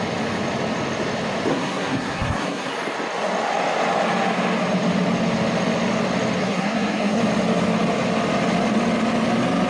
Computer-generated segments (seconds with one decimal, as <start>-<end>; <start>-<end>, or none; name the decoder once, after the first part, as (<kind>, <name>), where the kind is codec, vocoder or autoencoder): 1.5-2.7 (codec, SNAC); 6.4-7.2